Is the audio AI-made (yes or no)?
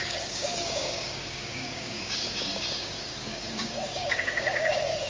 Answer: yes